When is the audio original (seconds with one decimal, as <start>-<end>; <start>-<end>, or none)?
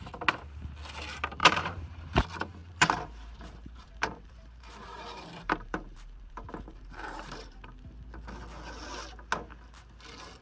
0.0-1.4; 2.2-2.6; 7.6-10.4